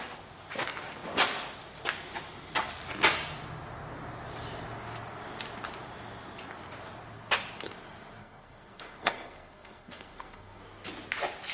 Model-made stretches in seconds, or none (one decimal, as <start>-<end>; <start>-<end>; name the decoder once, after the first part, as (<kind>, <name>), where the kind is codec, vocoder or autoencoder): 8.2-10.6 (codec, SNAC)